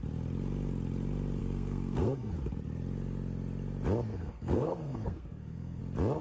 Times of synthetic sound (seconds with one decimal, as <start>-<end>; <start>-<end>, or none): 1.4-2.3; 4.1-5.8